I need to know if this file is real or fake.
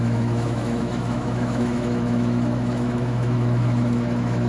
fake